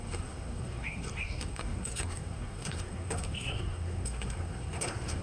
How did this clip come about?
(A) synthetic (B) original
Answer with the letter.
A